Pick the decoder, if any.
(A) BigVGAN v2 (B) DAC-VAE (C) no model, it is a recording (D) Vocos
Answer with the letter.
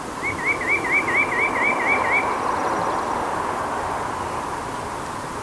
C